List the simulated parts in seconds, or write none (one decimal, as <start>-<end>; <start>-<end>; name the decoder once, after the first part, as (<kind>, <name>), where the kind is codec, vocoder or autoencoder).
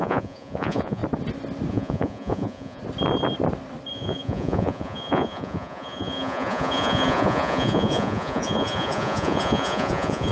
0.0-1.0 (vocoder, Vocos); 1.7-2.8; 3.9-10.3